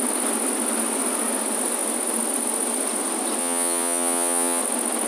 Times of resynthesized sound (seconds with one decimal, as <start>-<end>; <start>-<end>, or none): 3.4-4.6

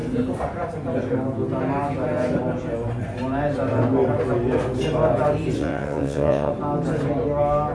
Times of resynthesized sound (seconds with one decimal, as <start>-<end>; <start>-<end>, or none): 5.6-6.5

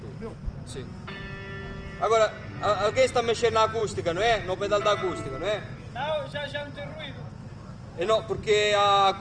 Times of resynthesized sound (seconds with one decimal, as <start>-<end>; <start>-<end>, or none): none

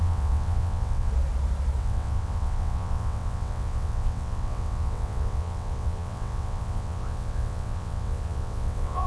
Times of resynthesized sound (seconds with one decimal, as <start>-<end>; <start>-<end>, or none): 0.0-1.1; 1.8-9.1

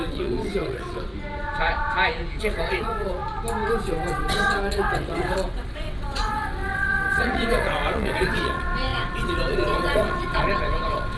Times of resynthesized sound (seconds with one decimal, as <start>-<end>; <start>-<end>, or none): 0.0-1.1; 2.4-3.2; 3.7-11.2